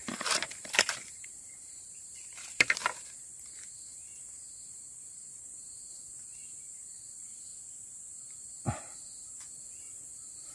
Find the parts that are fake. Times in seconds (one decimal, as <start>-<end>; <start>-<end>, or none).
0.0-2.8; 7.1-7.5; 9.7-10.5